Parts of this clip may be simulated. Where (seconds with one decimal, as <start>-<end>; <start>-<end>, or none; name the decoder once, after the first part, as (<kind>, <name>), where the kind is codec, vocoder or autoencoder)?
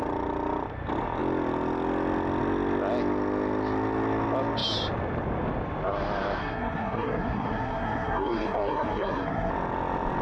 6.4-9.5 (codec, SNAC)